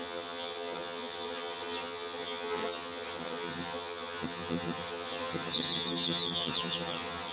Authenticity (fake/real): fake